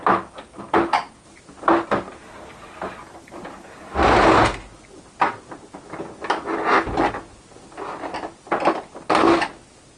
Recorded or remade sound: recorded